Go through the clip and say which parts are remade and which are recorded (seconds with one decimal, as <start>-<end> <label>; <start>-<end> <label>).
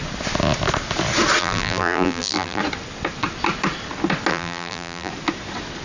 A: 0.0-1.4 recorded; 1.4-2.6 remade; 2.6-4.3 recorded; 4.3-5.1 remade; 5.1-5.8 recorded